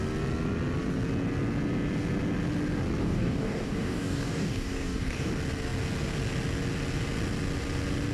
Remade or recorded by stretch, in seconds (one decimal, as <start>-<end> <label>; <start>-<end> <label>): 0.0-3.0 recorded; 3.0-5.3 remade; 5.3-8.1 recorded